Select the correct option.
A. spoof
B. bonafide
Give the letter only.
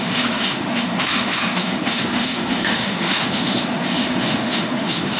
A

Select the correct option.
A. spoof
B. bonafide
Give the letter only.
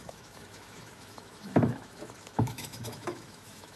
A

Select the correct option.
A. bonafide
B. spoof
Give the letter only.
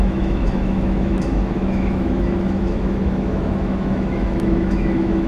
B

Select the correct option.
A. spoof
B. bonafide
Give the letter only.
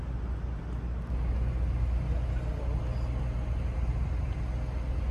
B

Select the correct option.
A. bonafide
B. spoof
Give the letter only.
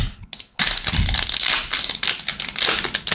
A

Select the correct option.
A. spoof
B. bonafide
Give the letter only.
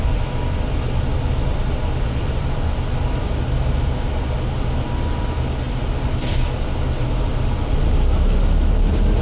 B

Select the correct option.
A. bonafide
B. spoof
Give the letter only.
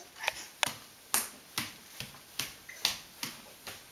A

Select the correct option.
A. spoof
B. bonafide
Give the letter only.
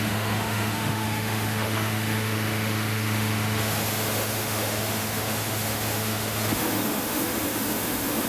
A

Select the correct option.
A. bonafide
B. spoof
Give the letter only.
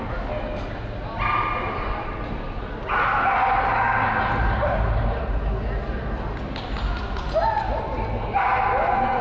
A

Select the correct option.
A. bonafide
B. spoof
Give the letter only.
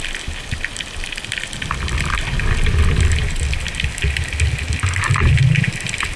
A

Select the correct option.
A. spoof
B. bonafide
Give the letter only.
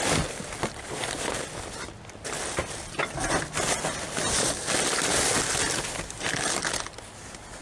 B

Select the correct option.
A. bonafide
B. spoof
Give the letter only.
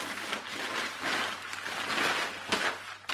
A